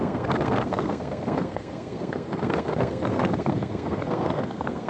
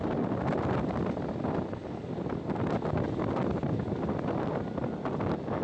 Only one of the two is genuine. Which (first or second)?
second